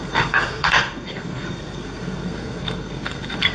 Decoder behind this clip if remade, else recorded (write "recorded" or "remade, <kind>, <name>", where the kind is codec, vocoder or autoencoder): remade, codec, SNAC